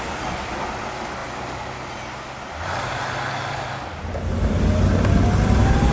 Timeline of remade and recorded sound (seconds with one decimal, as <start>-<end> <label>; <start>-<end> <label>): 0.0-5.9 recorded